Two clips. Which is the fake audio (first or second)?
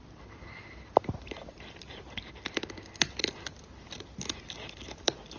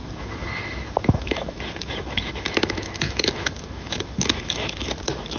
second